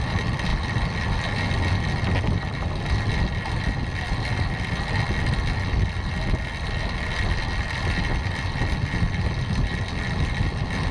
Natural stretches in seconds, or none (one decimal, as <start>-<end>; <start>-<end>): 0.0-10.9